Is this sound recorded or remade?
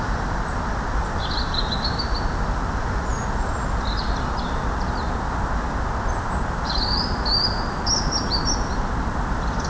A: recorded